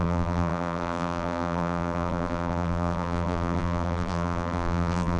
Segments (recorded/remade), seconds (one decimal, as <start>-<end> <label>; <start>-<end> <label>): 0.0-5.2 remade